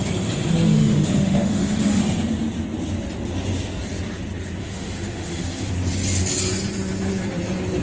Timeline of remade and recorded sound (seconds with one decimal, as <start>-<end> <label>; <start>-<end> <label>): 0.0-0.7 recorded; 0.7-2.0 remade; 2.0-4.6 recorded; 4.6-5.7 remade; 5.7-7.8 recorded